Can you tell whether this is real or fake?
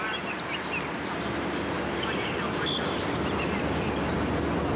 real